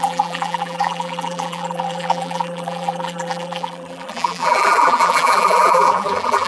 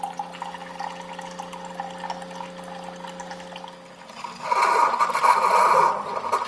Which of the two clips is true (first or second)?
second